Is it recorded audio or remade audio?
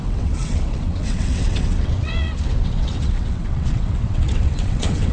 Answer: remade